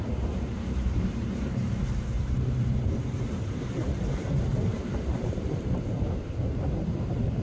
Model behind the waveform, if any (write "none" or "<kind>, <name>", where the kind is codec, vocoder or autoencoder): vocoder, BigVGAN v2